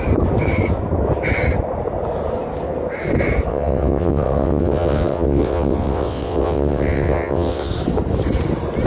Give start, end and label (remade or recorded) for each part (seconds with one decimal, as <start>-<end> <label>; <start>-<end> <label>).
0.0-3.5 recorded; 3.5-7.7 remade; 7.7-8.9 recorded